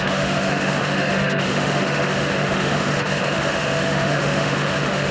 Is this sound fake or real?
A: fake